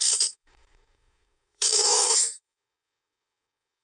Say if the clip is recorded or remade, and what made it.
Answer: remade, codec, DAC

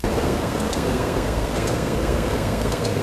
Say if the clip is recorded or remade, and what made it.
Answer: remade, codec, SNAC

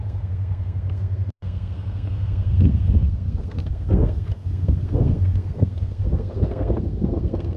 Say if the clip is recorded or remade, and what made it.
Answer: remade, codec, SNAC